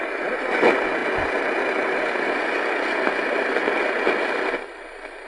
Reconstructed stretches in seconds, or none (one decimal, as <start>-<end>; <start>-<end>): none